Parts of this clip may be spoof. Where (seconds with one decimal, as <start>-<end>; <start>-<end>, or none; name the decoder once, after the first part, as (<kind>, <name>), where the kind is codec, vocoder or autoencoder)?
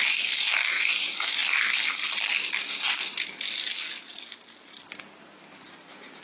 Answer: none